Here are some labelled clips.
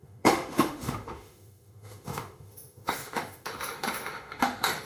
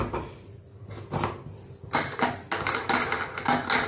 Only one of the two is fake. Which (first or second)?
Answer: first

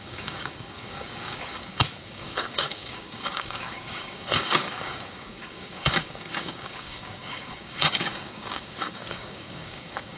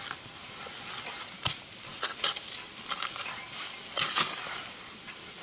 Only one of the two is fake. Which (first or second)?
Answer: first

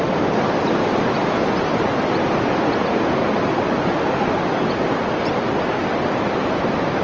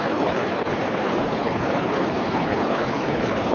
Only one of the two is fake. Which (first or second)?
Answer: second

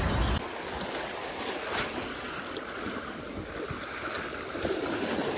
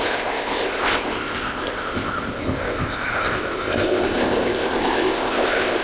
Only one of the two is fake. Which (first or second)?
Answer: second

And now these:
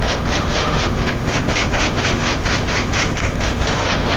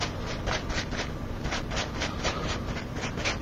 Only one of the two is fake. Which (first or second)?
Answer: first